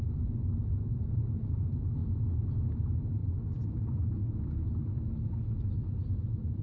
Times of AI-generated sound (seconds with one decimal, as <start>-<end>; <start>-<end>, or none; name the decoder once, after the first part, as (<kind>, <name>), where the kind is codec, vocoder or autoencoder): 0.0-2.0 (vocoder, BigVGAN v2); 2.8-3.2; 3.7-4.2; 5.6-6.6

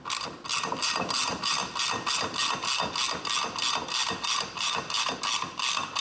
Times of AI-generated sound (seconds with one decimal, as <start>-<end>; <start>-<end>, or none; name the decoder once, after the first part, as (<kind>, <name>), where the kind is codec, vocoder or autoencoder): 1.6-2.1 (vocoder, BigVGAN v2); 4.0-5.2

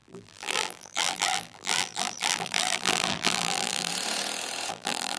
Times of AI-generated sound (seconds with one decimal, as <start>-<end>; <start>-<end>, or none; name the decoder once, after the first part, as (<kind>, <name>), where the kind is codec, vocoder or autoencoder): 0.0-3.9 (vocoder, BigVGAN v2); 4.7-5.2

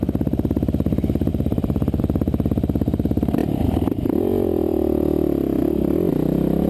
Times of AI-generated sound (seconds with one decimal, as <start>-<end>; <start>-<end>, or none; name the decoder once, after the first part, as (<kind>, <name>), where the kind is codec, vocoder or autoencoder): 1.3-2.0 (vocoder, BigVGAN v2); 3.4-5.6

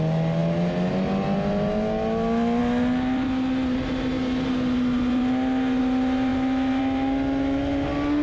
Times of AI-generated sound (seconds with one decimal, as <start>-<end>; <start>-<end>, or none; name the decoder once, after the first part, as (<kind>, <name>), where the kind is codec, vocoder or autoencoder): none

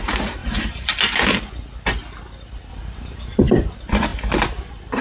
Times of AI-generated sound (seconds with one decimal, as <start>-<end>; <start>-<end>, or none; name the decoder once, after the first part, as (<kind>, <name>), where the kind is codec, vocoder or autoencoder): 0.4-0.9 (vocoder, BigVGAN v2); 2.7-3.5

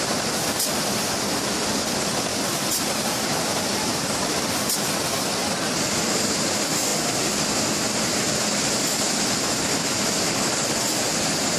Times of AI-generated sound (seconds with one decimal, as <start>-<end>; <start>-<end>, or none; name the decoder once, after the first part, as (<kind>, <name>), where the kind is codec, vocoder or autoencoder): 2.3-4.5 (vocoder, BigVGAN v2)